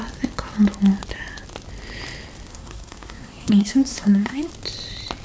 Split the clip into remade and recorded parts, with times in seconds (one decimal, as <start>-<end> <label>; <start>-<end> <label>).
0.0-2.5 recorded; 2.5-4.5 remade; 4.5-5.2 recorded